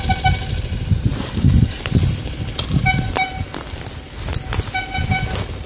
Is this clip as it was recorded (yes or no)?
yes